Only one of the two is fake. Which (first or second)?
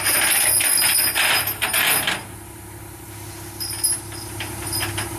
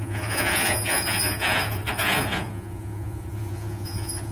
second